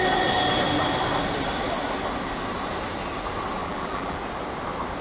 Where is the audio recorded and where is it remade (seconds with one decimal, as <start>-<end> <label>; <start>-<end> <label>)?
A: 0.0-3.6 recorded; 3.6-4.2 remade; 4.2-5.0 recorded